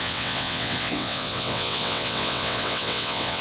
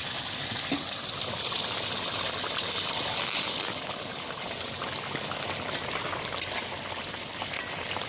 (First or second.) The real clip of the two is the second